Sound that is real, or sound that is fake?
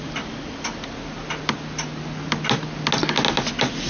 real